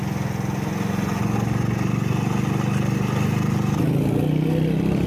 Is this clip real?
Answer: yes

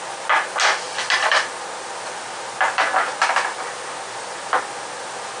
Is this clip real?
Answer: yes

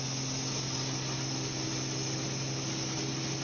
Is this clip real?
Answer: yes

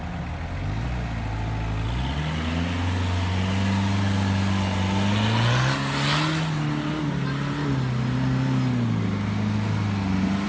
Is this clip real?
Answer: yes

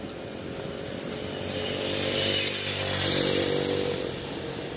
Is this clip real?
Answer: yes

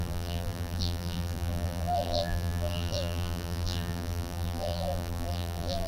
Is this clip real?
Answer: no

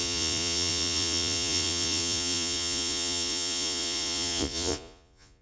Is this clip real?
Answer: no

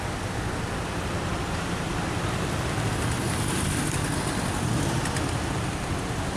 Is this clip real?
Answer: yes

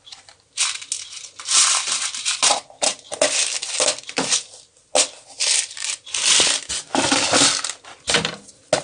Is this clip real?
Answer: yes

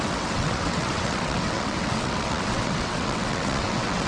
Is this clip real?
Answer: no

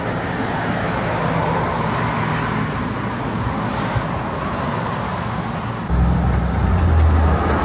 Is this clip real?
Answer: yes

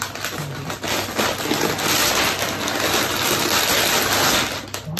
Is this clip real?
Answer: yes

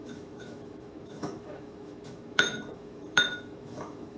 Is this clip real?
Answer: no